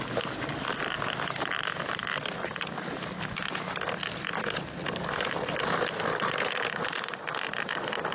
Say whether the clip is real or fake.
real